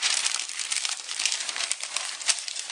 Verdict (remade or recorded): recorded